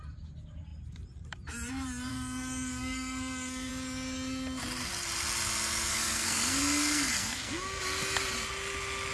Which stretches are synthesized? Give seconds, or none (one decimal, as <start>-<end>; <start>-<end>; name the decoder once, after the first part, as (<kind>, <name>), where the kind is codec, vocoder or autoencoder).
2.1-3.7 (codec, SNAC); 5.9-7.8